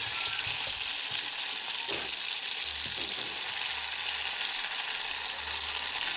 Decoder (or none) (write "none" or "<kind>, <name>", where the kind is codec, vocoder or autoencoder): none